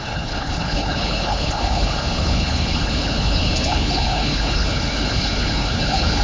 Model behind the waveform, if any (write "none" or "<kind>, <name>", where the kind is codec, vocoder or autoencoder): codec, HILCodec